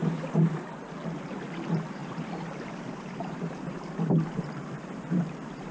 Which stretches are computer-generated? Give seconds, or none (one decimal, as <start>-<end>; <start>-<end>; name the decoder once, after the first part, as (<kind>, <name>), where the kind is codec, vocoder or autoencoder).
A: 0.0-5.7 (vocoder, BigVGAN v2)